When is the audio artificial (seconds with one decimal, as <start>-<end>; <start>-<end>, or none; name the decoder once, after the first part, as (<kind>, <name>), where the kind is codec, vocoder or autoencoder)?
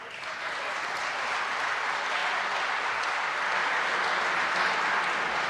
none